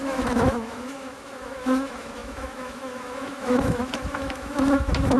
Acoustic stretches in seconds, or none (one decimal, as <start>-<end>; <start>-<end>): none